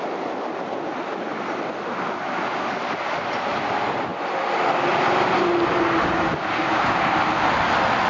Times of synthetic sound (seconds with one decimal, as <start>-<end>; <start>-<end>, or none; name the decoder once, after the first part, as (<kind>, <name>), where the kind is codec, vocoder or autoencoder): none